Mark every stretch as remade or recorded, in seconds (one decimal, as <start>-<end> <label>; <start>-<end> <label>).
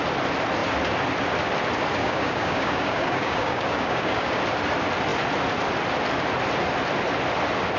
0.0-2.0 recorded; 2.0-4.4 remade; 4.4-7.8 recorded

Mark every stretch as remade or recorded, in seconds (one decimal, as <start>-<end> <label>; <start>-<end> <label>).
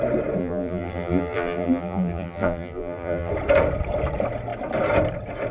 0.0-0.4 recorded; 0.4-3.3 remade; 3.3-5.5 recorded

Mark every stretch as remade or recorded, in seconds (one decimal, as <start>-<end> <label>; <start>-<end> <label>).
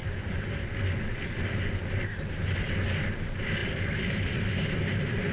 0.0-5.3 recorded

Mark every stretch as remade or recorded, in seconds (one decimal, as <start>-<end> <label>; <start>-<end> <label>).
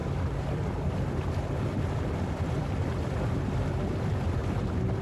0.0-4.4 remade; 4.4-5.0 recorded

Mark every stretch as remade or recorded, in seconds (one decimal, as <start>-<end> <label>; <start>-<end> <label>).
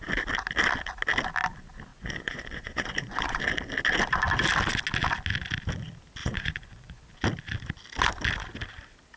0.0-1.9 recorded; 1.9-3.4 remade; 3.4-6.2 recorded; 6.2-7.1 remade; 7.1-9.2 recorded